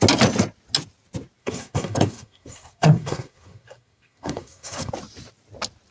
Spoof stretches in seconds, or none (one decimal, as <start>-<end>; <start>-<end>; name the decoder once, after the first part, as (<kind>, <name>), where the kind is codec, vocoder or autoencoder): 1.4-4.9 (codec, SNAC)

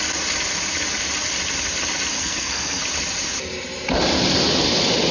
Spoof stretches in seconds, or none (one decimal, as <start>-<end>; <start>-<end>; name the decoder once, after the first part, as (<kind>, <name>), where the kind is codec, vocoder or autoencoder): 2.1-2.8 (codec, SNAC)